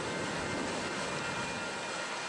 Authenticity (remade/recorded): recorded